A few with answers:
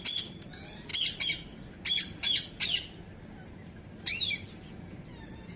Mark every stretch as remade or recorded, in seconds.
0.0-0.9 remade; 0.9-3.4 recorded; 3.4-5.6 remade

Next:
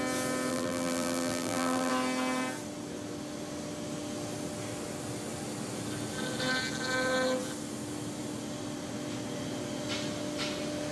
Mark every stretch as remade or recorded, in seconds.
0.0-0.5 recorded; 0.5-1.9 remade; 1.9-10.9 recorded

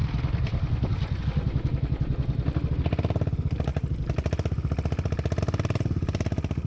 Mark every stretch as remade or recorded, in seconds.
0.0-6.7 recorded

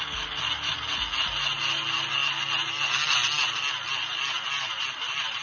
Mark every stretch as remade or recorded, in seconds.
0.0-5.4 recorded